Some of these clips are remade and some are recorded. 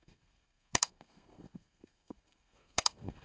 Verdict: remade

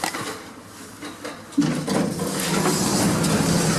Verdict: recorded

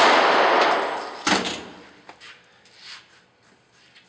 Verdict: recorded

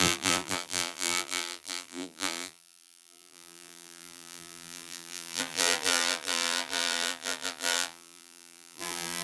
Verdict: remade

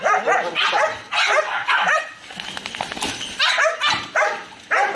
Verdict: recorded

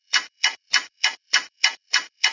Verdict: remade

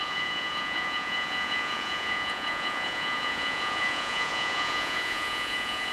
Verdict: remade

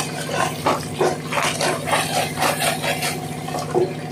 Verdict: remade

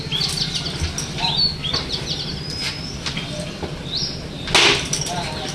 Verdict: recorded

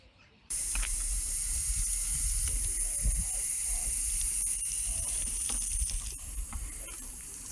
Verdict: remade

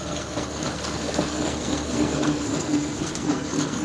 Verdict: remade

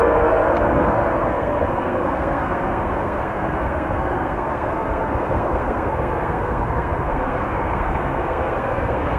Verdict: remade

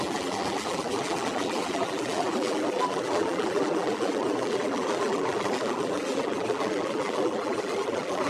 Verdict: remade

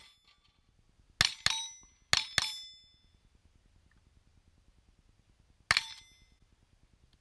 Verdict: recorded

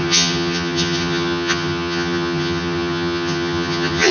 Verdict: remade